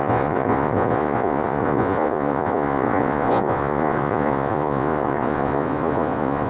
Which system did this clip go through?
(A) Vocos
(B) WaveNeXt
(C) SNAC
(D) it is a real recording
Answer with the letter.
A